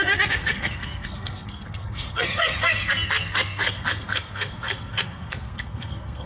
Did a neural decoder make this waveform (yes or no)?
yes